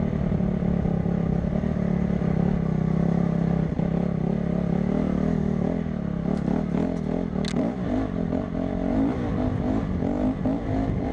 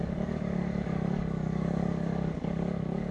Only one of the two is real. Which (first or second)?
first